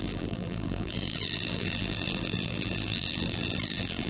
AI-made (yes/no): yes